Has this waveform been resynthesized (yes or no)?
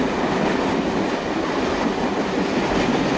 no